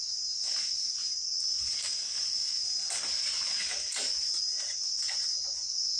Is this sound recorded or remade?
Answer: recorded